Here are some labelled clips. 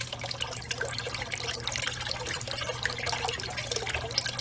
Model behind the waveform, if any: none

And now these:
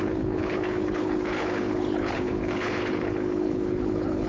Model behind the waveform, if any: codec, HILCodec